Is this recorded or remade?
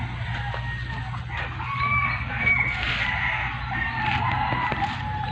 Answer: recorded